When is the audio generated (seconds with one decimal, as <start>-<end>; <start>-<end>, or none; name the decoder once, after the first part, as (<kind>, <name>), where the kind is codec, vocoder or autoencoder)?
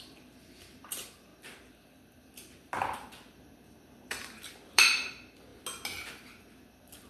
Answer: 0.0-1.3 (vocoder, BigVGAN v2); 1.8-5.5; 6.1-7.1